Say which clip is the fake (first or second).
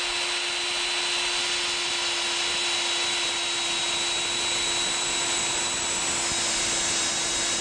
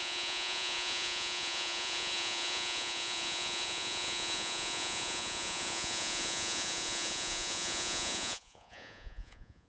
second